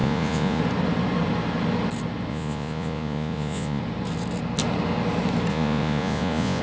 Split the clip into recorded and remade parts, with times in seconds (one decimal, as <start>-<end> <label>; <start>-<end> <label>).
0.0-0.6 remade; 0.6-2.3 recorded; 2.3-3.8 remade; 3.8-5.5 recorded; 5.5-6.6 remade